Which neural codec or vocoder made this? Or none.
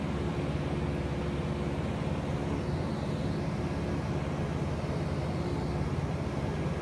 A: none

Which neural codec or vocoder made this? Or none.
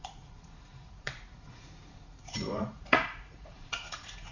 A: vocoder, Vocos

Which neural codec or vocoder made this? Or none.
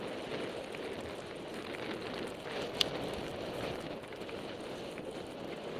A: none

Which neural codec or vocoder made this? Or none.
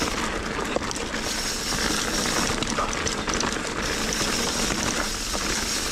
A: none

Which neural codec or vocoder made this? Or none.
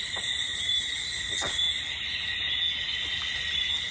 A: none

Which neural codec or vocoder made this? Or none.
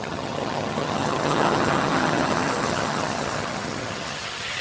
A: vocoder, HiFi-GAN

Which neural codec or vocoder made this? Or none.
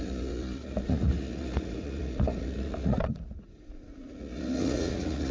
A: vocoder, Vocos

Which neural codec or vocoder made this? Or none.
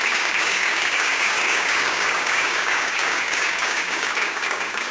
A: codec, DAC